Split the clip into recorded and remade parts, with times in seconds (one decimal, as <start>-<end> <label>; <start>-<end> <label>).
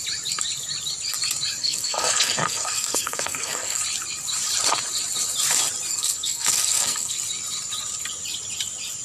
0.0-1.6 recorded; 1.6-3.8 remade; 3.8-5.9 recorded; 5.9-7.2 remade; 7.2-9.0 recorded